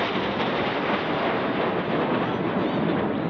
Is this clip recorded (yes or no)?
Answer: yes